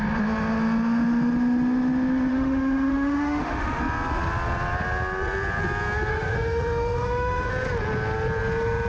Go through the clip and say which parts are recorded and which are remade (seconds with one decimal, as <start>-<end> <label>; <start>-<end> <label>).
0.0-2.3 recorded; 2.3-3.8 remade; 3.8-6.1 recorded; 6.1-7.5 remade; 7.5-8.9 recorded